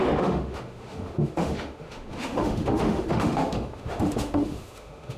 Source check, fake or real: fake